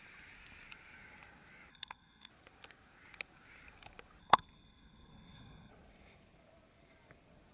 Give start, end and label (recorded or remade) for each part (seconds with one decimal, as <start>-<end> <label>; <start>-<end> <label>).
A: 0.0-1.7 recorded; 1.7-2.3 remade; 2.3-4.2 recorded; 4.2-5.7 remade; 5.7-7.5 recorded